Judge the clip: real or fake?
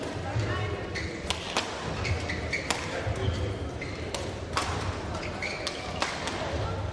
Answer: real